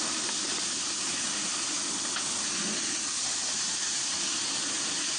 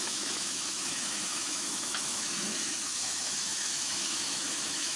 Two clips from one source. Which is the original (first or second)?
first